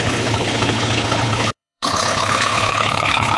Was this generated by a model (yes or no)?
yes